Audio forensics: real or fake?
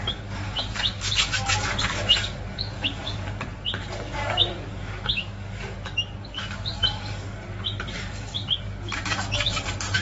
fake